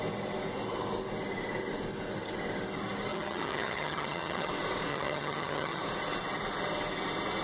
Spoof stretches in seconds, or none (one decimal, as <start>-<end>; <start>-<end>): 3.1-4.5; 4.9-5.8